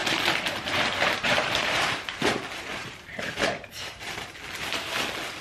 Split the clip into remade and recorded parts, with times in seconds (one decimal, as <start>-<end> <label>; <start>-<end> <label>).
0.0-1.9 remade; 1.9-2.7 recorded; 2.7-4.1 remade; 4.1-5.4 recorded